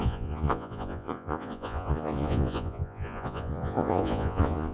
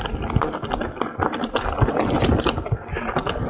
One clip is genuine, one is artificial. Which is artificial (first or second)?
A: first